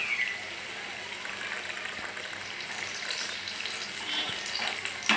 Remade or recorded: recorded